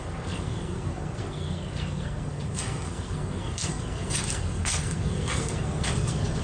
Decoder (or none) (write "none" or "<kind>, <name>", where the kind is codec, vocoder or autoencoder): codec, SNAC